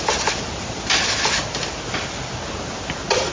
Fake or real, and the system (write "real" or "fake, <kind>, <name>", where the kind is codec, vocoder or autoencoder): real